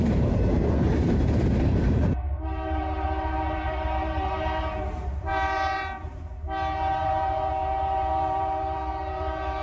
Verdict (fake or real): fake